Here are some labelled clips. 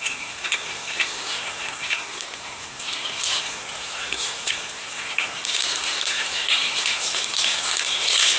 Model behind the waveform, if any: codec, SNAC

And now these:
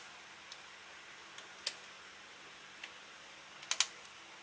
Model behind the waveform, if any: none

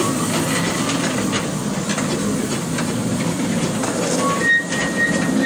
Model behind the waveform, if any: none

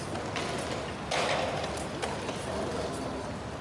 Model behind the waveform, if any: none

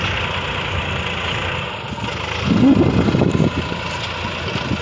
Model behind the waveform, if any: none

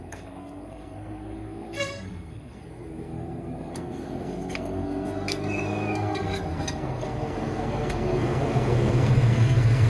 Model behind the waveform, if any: codec, SNAC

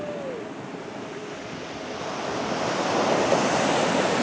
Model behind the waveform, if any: none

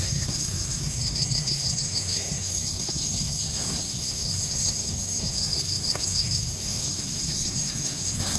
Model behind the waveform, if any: codec, SNAC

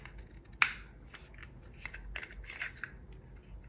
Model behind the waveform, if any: none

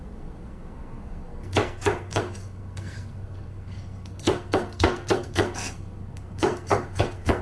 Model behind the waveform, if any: codec, SNAC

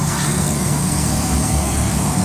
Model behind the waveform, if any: codec, SNAC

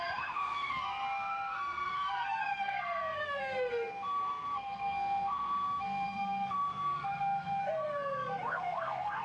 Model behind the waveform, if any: codec, SNAC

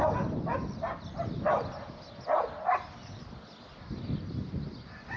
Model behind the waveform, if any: none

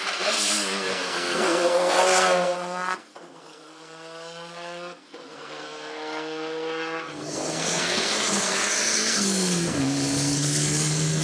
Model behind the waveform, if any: codec, SNAC